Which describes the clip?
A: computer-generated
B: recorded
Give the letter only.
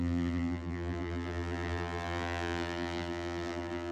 A